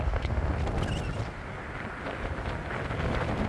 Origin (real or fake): real